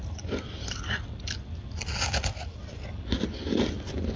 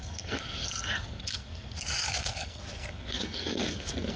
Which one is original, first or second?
first